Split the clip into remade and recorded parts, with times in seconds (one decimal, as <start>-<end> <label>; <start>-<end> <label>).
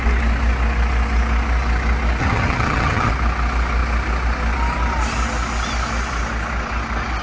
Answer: 0.0-2.2 recorded; 2.2-3.1 remade; 3.1-7.2 recorded